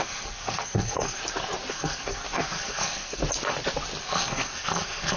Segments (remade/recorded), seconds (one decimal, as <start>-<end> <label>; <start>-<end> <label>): 0.0-1.2 remade; 1.2-1.7 recorded; 1.7-3.2 remade; 3.2-4.0 recorded; 4.0-5.2 remade